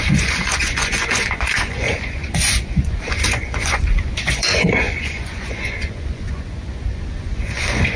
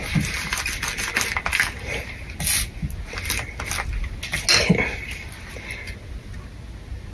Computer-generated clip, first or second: first